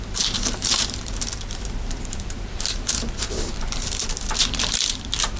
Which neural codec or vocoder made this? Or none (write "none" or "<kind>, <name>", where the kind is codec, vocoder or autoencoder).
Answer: vocoder, BigVGAN v2